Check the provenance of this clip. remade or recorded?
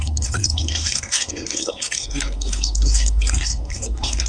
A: remade